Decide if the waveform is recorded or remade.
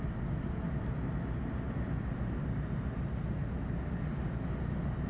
recorded